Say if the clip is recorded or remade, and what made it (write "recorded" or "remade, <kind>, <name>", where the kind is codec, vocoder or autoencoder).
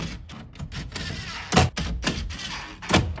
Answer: recorded